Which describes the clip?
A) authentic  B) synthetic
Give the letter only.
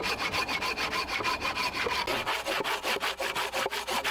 A